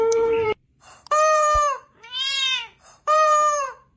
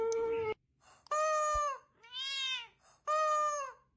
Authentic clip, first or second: second